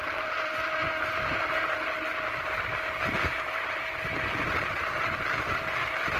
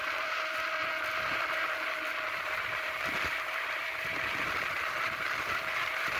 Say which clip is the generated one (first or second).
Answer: second